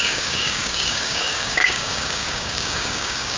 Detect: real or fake fake